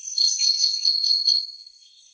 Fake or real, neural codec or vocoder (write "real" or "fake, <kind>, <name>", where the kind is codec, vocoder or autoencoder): fake, codec, SNAC